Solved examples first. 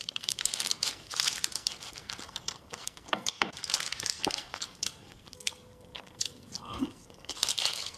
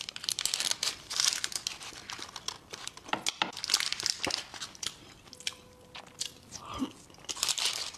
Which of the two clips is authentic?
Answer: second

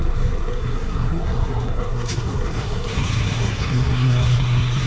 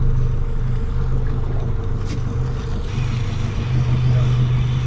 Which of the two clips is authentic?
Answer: second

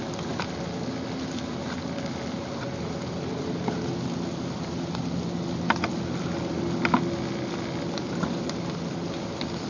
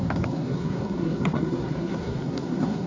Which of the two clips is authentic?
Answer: first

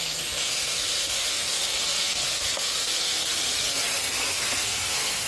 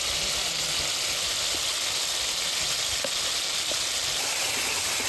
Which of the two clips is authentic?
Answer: second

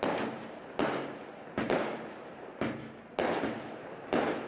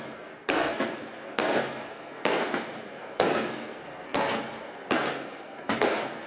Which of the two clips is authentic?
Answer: first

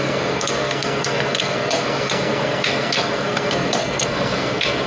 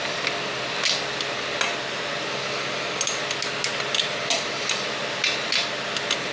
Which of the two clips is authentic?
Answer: second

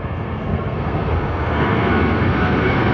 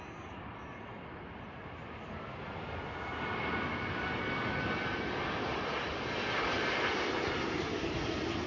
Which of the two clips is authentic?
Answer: second